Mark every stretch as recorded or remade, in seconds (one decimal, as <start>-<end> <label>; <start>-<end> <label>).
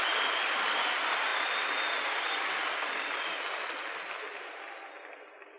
0.0-5.6 recorded